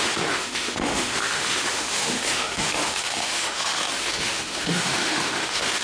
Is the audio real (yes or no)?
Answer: no